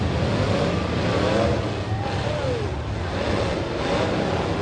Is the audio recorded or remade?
recorded